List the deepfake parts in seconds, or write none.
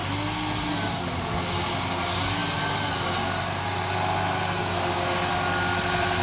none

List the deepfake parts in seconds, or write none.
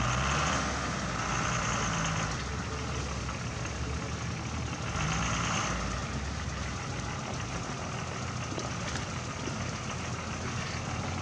none